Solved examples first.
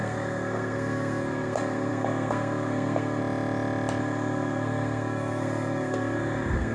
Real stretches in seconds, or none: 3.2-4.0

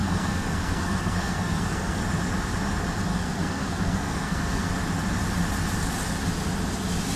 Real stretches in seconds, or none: 2.0-3.1; 4.7-7.2

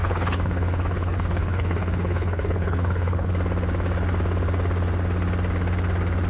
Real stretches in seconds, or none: 3.3-6.3

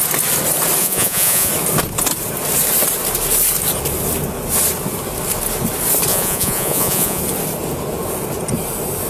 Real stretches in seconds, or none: 0.0-0.8; 1.5-6.1; 7.2-9.1

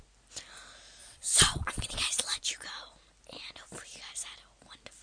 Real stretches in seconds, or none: 0.0-1.0; 2.4-5.0

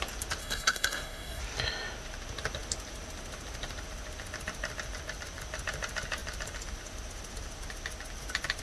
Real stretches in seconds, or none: 0.0-0.4; 1.4-8.6

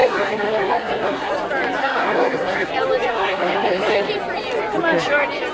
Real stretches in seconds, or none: 1.3-1.8; 2.7-3.1; 4.0-5.5